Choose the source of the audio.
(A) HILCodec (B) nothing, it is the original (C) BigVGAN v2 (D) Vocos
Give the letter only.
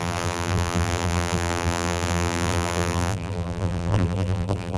C